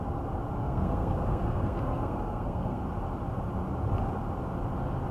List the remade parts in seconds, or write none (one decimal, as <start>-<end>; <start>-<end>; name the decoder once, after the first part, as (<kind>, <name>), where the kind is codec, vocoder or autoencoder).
0.6-2.8 (codec, SNAC)